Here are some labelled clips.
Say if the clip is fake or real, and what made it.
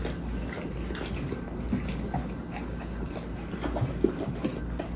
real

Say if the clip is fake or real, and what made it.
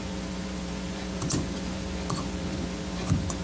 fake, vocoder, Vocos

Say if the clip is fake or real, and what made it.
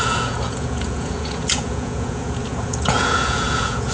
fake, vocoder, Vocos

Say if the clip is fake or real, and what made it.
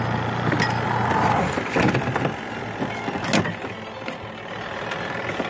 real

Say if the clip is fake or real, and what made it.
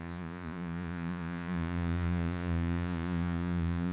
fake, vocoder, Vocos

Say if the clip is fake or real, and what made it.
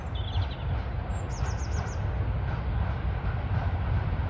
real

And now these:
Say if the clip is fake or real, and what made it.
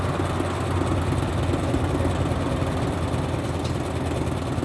real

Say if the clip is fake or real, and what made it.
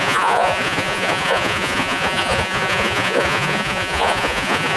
fake, vocoder, Vocos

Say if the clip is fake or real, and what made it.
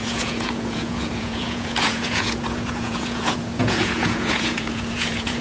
fake, vocoder, Vocos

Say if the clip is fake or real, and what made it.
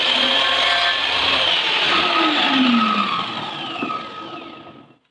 real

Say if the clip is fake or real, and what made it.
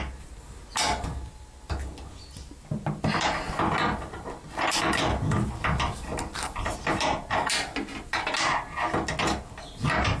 real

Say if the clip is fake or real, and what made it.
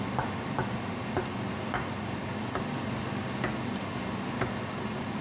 real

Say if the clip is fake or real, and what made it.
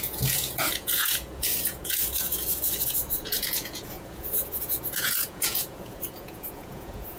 fake, vocoder, Vocos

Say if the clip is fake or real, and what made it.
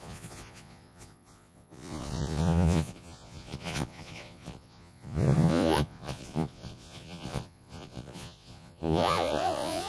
fake, vocoder, Vocos